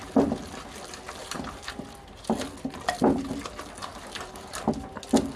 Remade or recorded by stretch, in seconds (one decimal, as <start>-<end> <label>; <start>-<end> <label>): 0.0-1.2 recorded; 1.2-1.7 remade; 1.7-3.8 recorded; 3.8-4.7 remade; 4.7-5.4 recorded